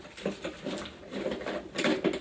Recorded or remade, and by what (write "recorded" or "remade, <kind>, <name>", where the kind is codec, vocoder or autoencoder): recorded